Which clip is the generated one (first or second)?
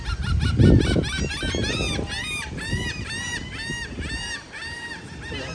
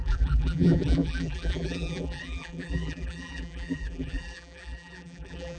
second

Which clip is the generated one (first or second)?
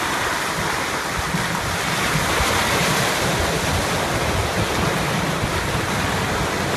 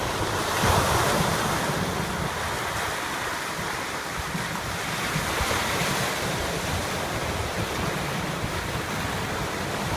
second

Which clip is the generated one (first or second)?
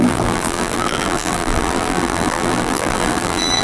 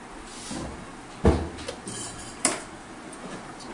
first